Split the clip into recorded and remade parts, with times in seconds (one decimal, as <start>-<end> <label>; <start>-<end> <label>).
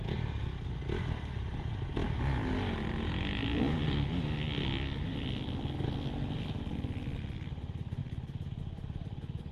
0.0-9.5 recorded